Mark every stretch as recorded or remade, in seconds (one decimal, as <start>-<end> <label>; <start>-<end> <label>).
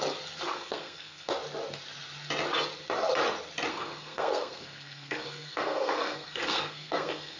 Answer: 0.0-0.5 recorded; 0.5-1.3 remade; 1.3-3.7 recorded; 3.7-7.4 remade